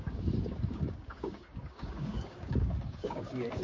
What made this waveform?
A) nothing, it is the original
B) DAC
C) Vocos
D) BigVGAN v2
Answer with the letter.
B